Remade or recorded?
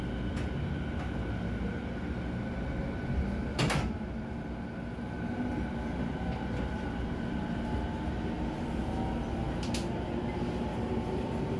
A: recorded